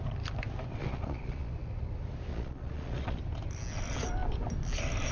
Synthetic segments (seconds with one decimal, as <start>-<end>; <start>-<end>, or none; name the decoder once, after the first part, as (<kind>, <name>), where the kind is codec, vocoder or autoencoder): 0.8-1.5 (vocoder, Vocos); 2.3-3.2